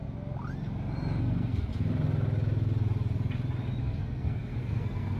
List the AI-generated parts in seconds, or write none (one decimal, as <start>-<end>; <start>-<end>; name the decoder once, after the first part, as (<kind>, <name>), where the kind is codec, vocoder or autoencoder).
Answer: 1.2-1.7 (codec, SNAC); 3.8-5.2